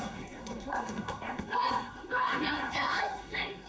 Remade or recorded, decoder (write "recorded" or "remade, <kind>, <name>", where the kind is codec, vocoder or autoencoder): remade, codec, SNAC